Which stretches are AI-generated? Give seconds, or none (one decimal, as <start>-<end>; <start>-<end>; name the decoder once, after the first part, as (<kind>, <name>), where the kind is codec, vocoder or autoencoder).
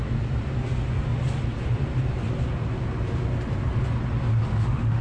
4.5-5.0 (autoencoder, DAC-VAE)